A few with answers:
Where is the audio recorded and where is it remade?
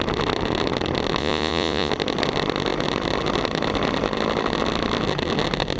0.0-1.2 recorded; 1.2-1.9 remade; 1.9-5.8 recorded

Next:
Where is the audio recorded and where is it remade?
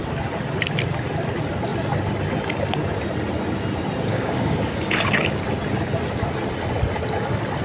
0.0-4.1 recorded; 4.1-5.4 remade; 5.4-7.6 recorded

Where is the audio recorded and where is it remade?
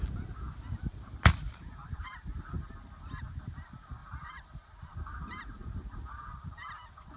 0.0-1.8 recorded; 1.8-2.4 remade; 2.4-4.0 recorded; 4.0-4.9 remade; 4.9-7.2 recorded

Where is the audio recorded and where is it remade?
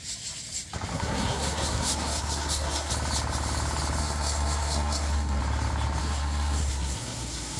0.0-0.9 recorded; 0.9-2.9 remade; 2.9-4.0 recorded; 4.0-5.4 remade; 5.4-6.0 recorded; 6.0-7.6 remade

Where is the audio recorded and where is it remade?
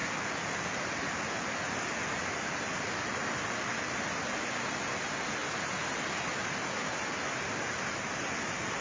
0.0-5.4 recorded; 5.4-6.0 remade; 6.0-8.8 recorded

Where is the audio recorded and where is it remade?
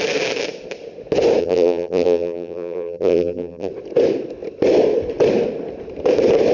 0.0-1.4 recorded; 1.4-3.7 remade; 3.7-6.5 recorded